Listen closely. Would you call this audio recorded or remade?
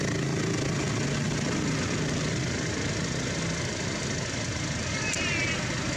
recorded